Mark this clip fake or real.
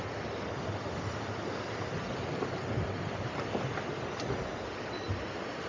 real